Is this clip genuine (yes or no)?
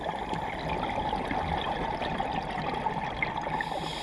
yes